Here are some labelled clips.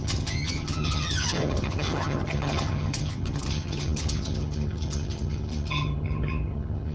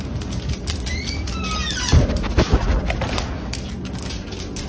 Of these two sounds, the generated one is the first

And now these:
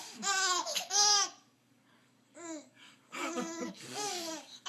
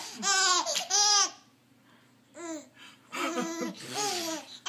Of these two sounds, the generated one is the first